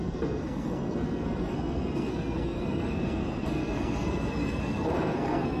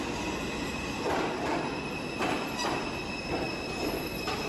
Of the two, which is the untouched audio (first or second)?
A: second